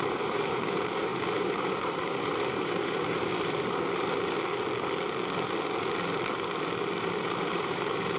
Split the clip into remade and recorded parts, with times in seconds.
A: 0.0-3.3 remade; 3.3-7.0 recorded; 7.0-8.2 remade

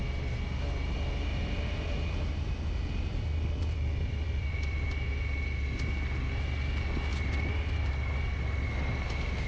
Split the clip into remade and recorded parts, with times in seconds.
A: 0.0-1.3 recorded; 1.3-2.2 remade; 2.2-3.1 recorded; 3.1-5.1 remade; 5.1-7.1 recorded; 7.1-7.9 remade; 7.9-9.5 recorded

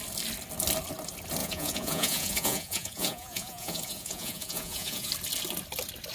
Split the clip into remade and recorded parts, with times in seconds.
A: 0.0-1.4 recorded; 1.4-5.1 remade; 5.1-6.1 recorded

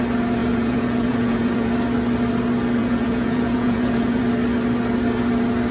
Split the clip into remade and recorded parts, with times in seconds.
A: 0.0-0.4 recorded; 0.4-1.7 remade; 1.7-2.8 recorded; 2.8-4.2 remade; 4.2-5.7 recorded

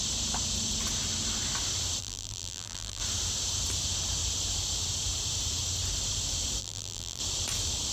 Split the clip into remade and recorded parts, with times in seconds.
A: 0.0-2.0 recorded; 2.0-3.0 remade; 3.0-6.6 recorded; 6.6-7.2 remade; 7.2-7.9 recorded

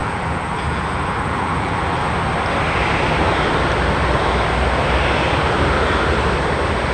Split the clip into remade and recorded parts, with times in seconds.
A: 0.0-2.1 remade; 2.1-6.9 recorded

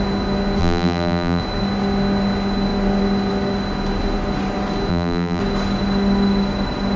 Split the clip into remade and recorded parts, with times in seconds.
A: 0.0-0.6 recorded; 0.6-1.4 remade; 1.4-4.9 recorded; 4.9-5.4 remade; 5.4-7.0 recorded

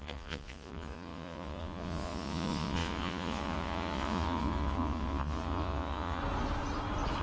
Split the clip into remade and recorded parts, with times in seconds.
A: 0.0-6.2 remade; 6.2-7.2 recorded